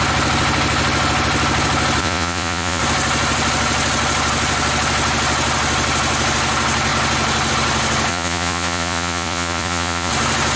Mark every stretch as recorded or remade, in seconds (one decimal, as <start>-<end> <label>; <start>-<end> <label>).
0.0-2.0 recorded; 2.0-2.8 remade; 2.8-8.1 recorded; 8.1-10.1 remade; 10.1-10.6 recorded